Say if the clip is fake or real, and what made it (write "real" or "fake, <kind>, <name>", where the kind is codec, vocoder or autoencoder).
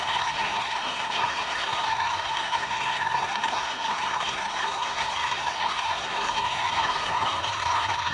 fake, codec, SNAC